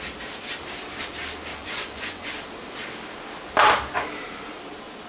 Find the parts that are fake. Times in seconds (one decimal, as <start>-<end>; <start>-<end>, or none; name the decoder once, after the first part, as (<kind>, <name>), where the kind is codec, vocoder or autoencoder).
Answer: 1.5-2.3 (vocoder, Vocos)